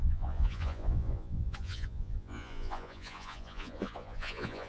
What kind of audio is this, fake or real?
fake